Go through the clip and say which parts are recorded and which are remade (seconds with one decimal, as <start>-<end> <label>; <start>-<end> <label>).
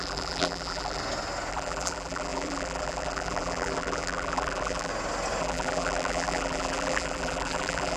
0.0-1.0 remade; 1.0-1.5 recorded; 1.5-4.9 remade; 4.9-5.4 recorded; 5.4-8.0 remade